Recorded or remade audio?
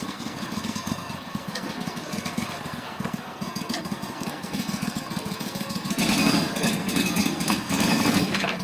remade